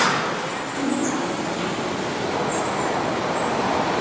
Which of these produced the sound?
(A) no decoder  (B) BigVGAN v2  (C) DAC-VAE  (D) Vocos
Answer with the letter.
A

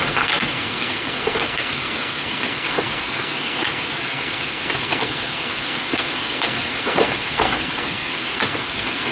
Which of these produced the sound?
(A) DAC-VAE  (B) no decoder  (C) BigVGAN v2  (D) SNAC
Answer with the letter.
D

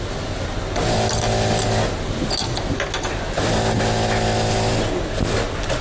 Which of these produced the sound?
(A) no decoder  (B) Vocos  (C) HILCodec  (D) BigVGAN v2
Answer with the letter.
A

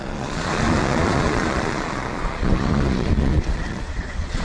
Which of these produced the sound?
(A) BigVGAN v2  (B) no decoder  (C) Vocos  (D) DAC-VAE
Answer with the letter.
C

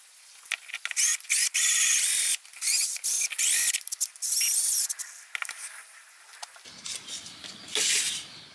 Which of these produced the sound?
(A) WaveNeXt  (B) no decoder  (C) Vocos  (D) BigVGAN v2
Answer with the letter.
B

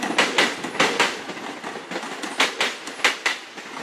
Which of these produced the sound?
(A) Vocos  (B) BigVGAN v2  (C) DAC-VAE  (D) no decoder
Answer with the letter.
D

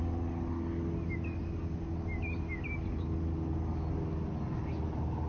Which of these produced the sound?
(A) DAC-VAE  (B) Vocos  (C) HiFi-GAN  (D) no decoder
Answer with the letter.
D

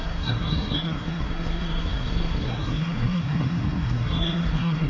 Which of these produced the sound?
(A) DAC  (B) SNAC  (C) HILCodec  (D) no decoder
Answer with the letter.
B